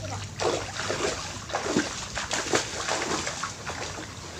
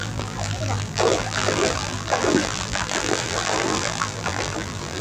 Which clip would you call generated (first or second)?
second